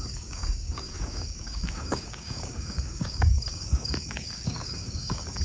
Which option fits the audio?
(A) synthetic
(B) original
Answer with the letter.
A